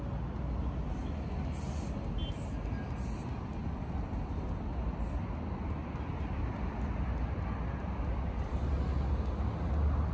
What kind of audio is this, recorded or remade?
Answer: recorded